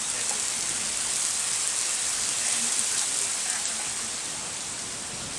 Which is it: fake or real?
real